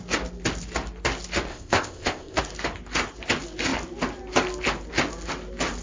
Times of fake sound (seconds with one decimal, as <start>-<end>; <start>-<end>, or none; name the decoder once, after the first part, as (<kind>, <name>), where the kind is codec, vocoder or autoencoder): 1.5-2.4 (codec, ZipCodec)